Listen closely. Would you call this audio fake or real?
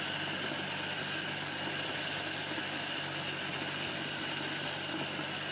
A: real